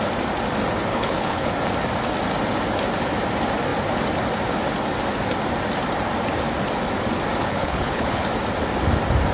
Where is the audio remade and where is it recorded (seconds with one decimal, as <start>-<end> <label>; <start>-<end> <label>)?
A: 0.0-0.9 recorded; 0.9-1.5 remade; 1.5-7.4 recorded; 7.4-8.3 remade; 8.3-9.3 recorded